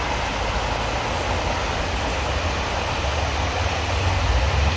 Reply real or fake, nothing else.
real